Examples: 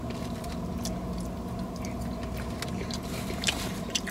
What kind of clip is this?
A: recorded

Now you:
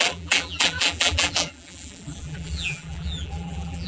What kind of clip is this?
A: remade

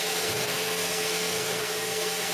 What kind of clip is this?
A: remade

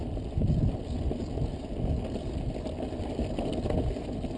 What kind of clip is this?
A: recorded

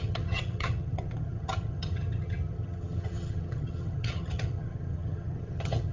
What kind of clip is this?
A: remade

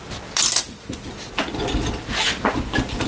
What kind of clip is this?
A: recorded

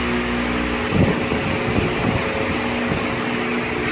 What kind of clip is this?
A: recorded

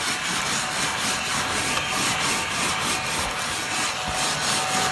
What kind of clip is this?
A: recorded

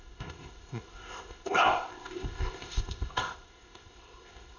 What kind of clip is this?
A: remade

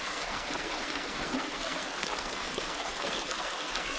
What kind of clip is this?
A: remade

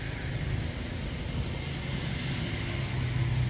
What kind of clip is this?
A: recorded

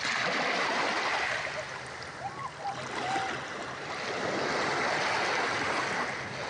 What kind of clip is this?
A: recorded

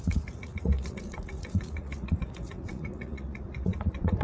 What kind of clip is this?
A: remade